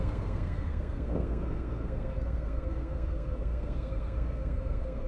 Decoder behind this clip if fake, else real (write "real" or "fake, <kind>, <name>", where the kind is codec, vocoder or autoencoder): fake, codec, SNAC